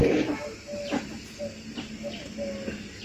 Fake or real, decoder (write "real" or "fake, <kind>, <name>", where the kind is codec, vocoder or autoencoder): real